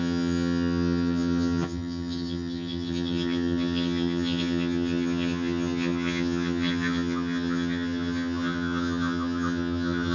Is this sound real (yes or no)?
no